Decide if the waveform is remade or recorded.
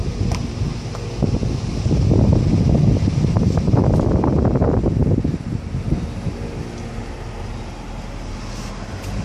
recorded